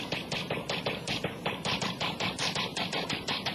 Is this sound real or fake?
fake